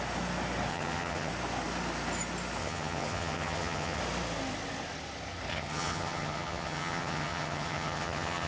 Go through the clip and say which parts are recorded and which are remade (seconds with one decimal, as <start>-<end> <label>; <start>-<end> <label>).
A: 0.0-0.7 recorded; 0.7-1.3 remade; 1.3-2.6 recorded; 2.6-4.0 remade; 4.0-5.5 recorded; 5.5-8.5 remade